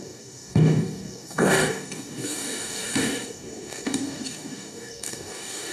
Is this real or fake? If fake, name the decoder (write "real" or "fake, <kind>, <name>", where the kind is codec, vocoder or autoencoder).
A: fake, codec, DAC